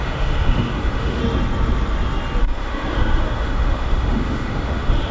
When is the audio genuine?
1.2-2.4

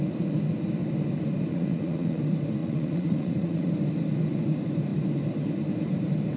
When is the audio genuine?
0.0-1.5; 2.2-2.6; 3.7-6.4

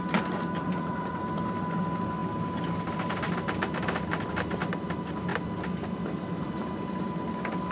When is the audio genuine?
0.0-0.6; 1.2-7.7

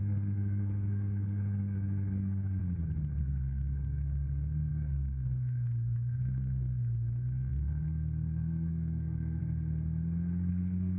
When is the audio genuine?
2.6-3.2; 9.4-10.5

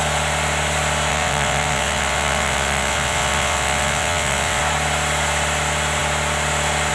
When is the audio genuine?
0.0-1.1; 4.6-6.9

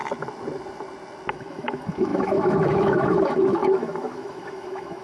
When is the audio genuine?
0.0-1.3

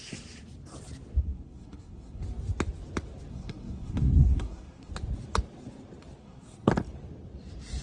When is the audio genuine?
0.0-1.2; 2.2-3.3; 4.9-6.2; 6.7-7.8